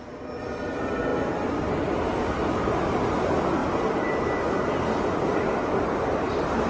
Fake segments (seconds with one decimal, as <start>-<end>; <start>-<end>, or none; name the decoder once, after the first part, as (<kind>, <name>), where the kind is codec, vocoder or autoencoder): none